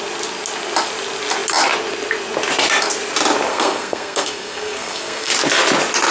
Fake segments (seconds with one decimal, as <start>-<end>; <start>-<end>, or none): 3.5-5.3